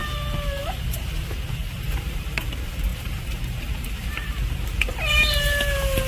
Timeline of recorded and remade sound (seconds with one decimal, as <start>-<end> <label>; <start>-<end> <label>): 0.0-1.6 recorded; 1.6-2.5 remade; 2.5-2.9 recorded; 2.9-4.8 remade; 4.8-6.1 recorded